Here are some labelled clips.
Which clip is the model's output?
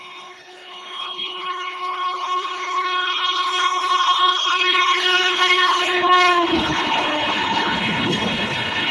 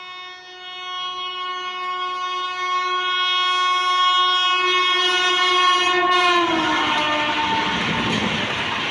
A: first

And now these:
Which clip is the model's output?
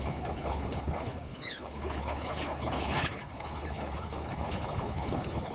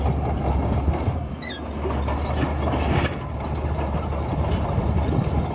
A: first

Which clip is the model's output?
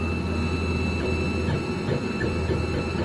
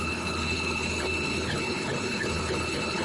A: second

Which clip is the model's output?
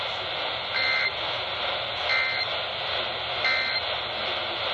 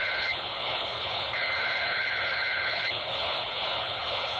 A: second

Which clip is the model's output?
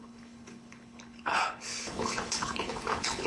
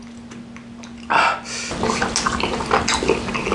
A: first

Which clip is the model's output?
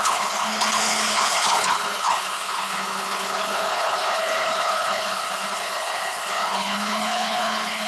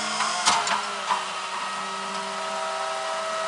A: first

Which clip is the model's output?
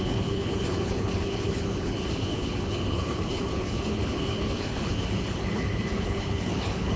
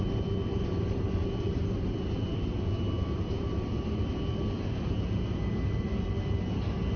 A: first